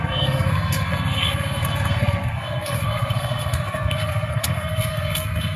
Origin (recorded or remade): remade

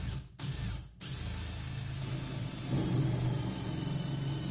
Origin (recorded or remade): recorded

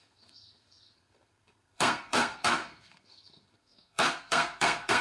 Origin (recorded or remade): remade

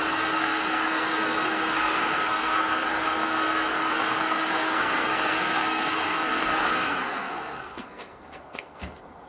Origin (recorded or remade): remade